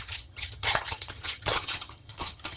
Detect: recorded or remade remade